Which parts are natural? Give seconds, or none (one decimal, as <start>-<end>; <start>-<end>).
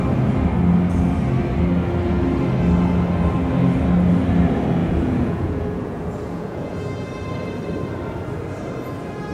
0.0-4.8; 6.8-9.3